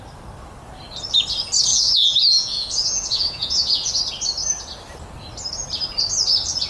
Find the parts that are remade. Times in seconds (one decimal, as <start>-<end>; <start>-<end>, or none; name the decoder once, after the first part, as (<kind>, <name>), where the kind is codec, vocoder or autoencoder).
1.7-4.0 (vocoder, Vocos)